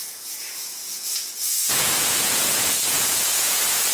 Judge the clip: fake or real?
fake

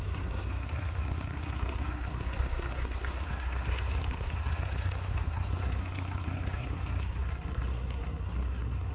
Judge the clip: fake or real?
fake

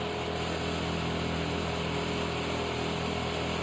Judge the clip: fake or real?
real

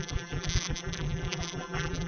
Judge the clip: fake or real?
fake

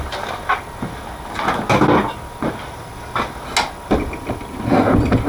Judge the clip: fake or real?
real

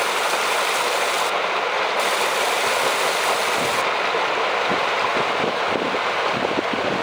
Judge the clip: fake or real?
real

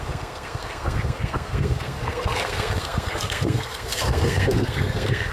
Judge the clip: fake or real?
fake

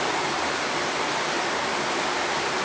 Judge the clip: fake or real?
real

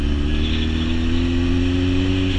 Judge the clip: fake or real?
real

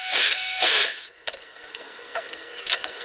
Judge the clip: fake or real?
fake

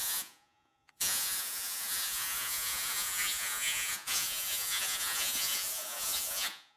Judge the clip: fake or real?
fake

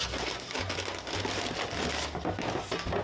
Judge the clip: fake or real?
real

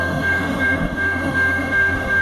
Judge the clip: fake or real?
fake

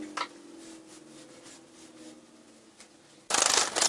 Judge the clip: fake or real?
real